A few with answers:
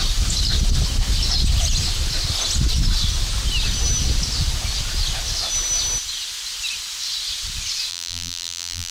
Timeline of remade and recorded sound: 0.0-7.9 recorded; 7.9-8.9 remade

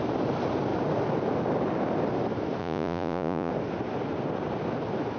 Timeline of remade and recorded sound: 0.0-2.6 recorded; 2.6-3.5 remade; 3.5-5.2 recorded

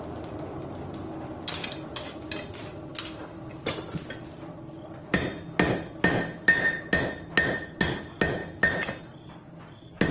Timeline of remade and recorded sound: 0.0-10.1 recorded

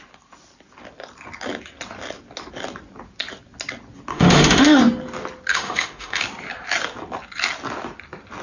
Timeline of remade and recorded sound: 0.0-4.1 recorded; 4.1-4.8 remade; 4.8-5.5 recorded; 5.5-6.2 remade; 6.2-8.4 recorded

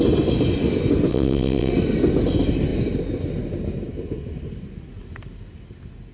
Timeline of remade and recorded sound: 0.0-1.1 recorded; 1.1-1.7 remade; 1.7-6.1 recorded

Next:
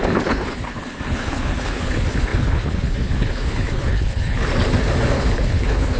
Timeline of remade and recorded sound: 0.0-4.5 remade; 4.5-5.1 recorded; 5.1-6.0 remade